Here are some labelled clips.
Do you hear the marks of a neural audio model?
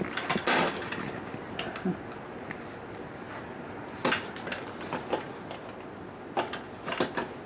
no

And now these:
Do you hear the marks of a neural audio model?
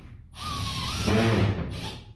no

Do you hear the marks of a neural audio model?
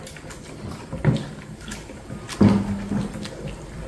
no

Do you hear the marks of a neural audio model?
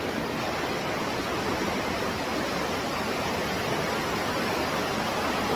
no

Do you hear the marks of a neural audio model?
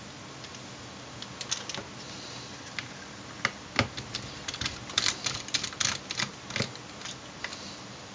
no